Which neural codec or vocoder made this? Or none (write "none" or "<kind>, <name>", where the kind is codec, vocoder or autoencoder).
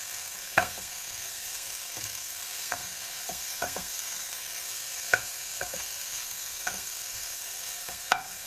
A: codec, SNAC